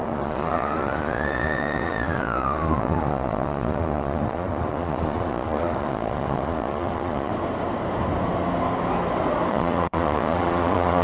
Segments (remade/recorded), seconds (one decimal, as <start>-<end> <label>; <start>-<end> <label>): 0.0-7.3 remade; 7.3-9.5 recorded; 9.5-11.0 remade